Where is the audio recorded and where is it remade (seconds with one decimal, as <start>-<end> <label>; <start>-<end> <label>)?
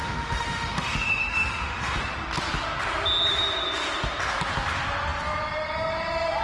0.0-2.0 remade; 2.0-6.4 recorded